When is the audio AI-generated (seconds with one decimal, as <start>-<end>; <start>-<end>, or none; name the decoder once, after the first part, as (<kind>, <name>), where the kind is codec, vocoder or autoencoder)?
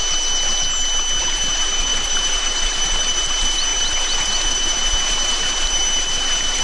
1.2-6.6 (vocoder, BigVGAN v2)